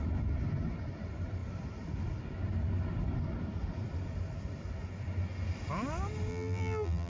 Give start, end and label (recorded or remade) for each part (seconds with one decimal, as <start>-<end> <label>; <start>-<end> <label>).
0.0-6.3 recorded; 6.3-7.1 remade